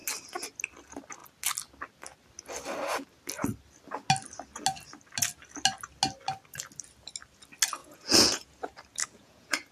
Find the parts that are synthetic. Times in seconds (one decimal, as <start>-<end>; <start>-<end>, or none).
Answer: 7.8-8.5; 9.0-9.7